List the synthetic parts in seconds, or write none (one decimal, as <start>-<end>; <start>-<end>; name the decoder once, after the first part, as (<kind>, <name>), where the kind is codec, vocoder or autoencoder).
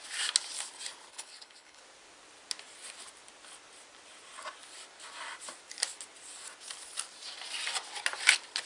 1.1-1.8 (codec, HILCodec)